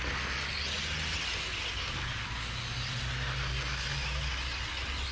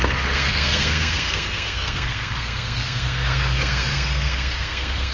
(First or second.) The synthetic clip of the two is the second